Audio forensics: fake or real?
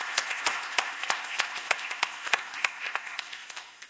fake